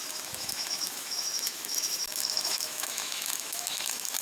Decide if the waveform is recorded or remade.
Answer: remade